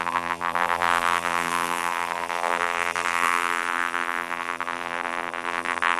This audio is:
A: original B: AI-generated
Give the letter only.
B